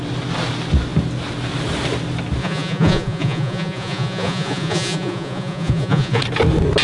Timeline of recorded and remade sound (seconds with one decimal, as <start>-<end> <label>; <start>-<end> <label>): 0.0-2.4 recorded; 2.4-6.2 remade; 6.2-6.8 recorded

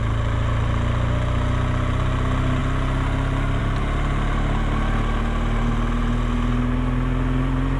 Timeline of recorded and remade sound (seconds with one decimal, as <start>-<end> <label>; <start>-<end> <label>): 0.0-7.8 recorded

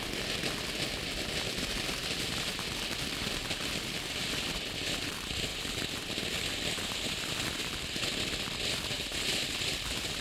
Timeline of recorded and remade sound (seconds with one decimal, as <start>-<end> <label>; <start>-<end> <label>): 0.0-2.0 remade; 2.0-2.5 recorded; 2.5-10.2 remade

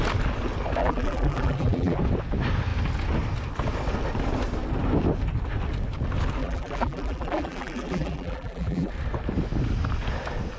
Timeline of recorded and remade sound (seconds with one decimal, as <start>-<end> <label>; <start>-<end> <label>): 0.0-0.8 recorded; 0.8-2.0 remade; 2.0-6.4 recorded; 6.4-8.9 remade; 8.9-10.6 recorded